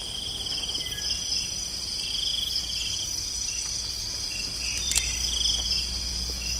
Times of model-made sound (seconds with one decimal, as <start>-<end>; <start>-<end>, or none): 2.3-3.0; 4.4-4.9